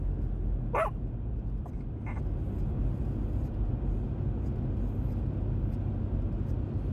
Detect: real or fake real